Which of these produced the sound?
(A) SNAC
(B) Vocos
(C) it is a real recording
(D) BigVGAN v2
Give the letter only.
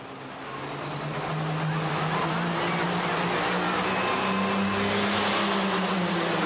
C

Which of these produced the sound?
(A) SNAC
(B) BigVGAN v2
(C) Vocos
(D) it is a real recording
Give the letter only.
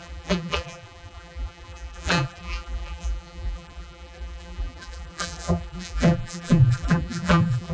B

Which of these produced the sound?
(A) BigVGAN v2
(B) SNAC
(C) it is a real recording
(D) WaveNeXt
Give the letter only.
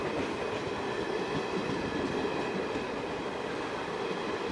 C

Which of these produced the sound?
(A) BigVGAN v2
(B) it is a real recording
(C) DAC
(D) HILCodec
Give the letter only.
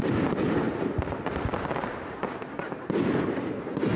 A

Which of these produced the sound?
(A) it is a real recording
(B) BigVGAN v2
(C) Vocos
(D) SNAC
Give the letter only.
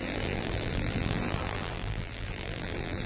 B